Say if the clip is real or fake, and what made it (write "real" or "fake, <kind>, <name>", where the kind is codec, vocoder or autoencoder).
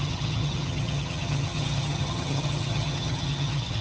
fake, vocoder, HiFi-GAN